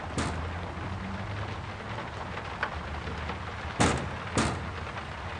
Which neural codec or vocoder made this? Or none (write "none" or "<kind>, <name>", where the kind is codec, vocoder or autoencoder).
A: none